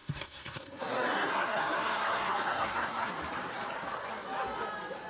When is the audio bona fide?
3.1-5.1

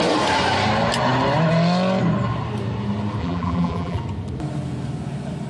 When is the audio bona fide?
0.0-3.2; 4.0-5.5

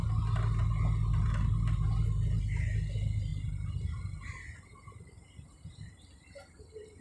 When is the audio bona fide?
0.0-3.3; 5.9-7.0